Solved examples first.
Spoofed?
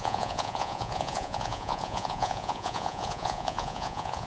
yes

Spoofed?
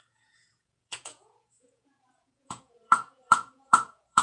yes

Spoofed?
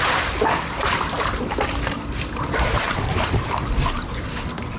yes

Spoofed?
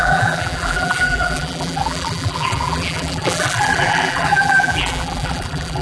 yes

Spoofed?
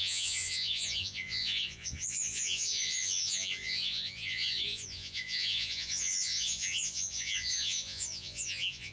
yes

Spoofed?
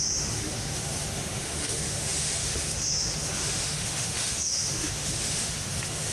yes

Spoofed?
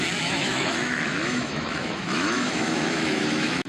yes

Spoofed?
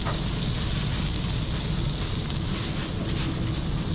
no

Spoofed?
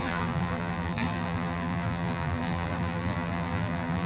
yes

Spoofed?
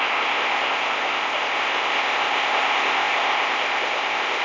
yes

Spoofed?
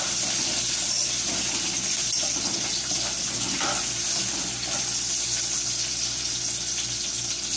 no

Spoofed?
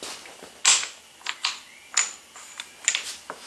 no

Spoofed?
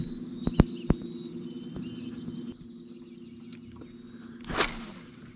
no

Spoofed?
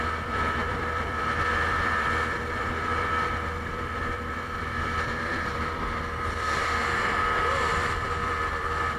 yes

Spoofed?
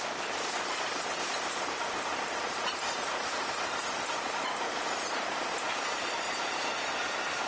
no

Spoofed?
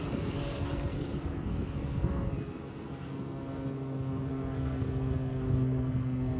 yes